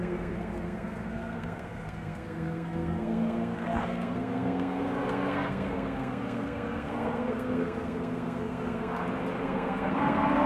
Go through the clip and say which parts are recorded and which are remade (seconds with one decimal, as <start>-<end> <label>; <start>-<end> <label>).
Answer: 0.0-8.9 remade; 8.9-9.4 recorded; 9.4-10.5 remade